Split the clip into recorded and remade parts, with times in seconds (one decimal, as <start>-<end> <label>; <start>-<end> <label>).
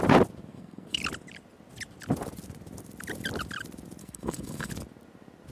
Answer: 0.0-0.5 recorded; 0.5-1.0 remade; 1.0-4.0 recorded; 4.0-4.7 remade; 4.7-5.5 recorded